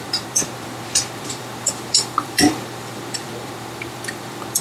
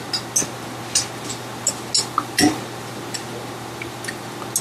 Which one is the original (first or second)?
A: second